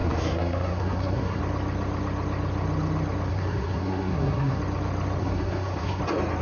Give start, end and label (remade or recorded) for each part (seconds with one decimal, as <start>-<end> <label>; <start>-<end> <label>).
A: 0.0-1.4 remade; 1.4-3.3 recorded; 3.3-4.6 remade; 4.6-5.2 recorded; 5.2-6.0 remade; 6.0-6.4 recorded